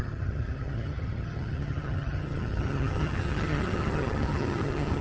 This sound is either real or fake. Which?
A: fake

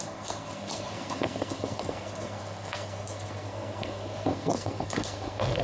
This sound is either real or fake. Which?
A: fake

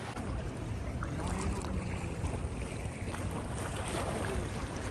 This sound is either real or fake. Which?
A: real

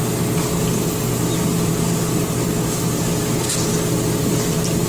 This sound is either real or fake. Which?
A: real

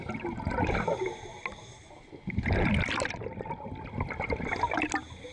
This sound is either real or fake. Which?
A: real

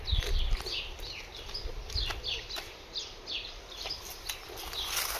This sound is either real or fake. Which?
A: real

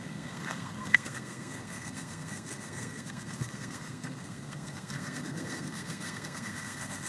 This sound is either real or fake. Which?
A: fake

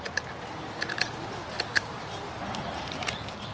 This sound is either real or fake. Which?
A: real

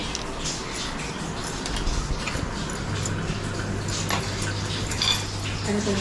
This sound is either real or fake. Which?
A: real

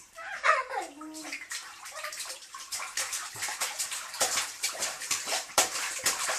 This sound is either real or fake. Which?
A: fake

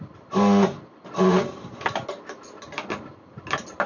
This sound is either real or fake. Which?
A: real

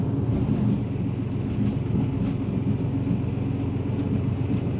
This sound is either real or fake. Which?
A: real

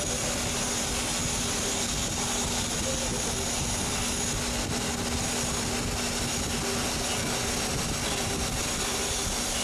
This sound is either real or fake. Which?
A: real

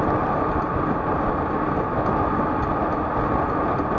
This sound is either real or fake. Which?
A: real